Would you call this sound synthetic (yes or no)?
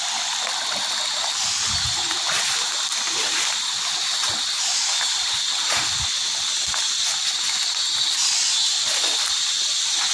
no